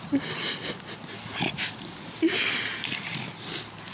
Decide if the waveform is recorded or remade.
recorded